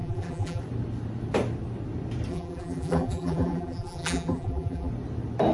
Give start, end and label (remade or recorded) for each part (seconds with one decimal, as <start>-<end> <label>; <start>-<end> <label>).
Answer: 0.0-0.6 remade; 0.6-2.3 recorded; 2.3-4.9 remade; 4.9-5.5 recorded